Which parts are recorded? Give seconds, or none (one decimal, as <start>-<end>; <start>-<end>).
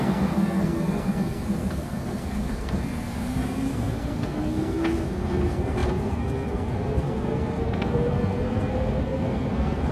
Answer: none